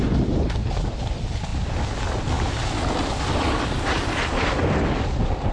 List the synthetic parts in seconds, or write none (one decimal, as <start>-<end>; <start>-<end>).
none